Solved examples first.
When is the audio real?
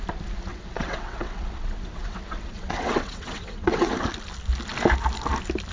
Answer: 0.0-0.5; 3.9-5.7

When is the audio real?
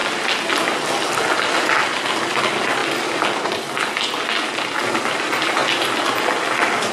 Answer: 0.0-6.9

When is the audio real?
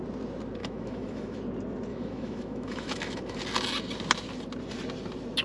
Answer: 0.0-0.6; 1.4-1.9; 3.4-5.4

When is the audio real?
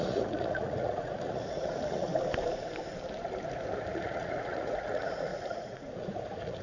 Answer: 2.1-3.9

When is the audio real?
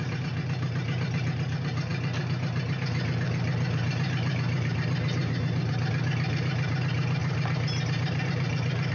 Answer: none